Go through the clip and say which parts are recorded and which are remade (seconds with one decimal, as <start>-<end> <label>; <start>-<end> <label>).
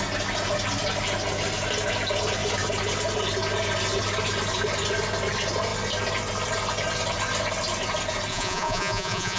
0.0-8.3 recorded; 8.3-9.4 remade